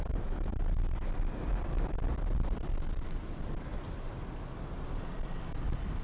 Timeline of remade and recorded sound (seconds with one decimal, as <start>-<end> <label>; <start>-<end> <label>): 0.0-6.0 recorded